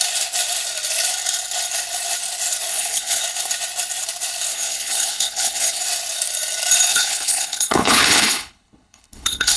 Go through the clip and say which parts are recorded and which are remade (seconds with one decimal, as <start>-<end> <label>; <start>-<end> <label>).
0.0-2.7 recorded; 2.7-3.2 remade; 3.2-4.5 recorded; 4.5-5.8 remade; 5.8-6.9 recorded; 6.9-9.6 remade